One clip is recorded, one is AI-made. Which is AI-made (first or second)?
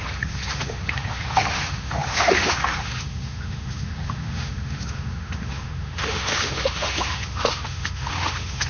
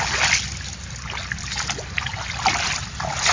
first